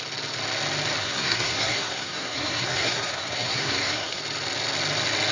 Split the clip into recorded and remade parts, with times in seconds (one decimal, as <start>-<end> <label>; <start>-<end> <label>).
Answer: 0.0-1.0 recorded; 1.0-4.2 remade; 4.2-5.3 recorded